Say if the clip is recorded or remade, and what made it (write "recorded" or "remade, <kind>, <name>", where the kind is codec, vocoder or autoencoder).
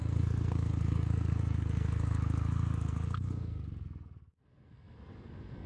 remade, codec, SNAC